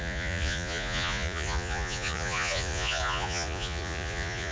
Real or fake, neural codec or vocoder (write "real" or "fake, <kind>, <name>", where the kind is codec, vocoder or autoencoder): fake, vocoder, Vocos